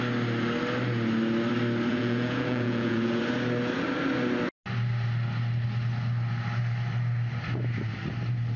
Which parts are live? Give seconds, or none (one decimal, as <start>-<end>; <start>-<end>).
0.0-1.9; 3.2-8.6